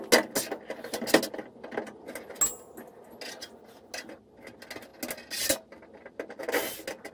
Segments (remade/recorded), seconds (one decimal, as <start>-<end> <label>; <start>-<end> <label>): 0.0-7.1 recorded